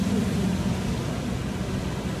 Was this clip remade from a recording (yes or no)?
no